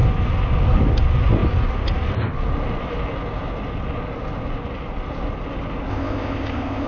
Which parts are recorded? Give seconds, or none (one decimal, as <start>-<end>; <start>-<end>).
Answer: 0.0-5.9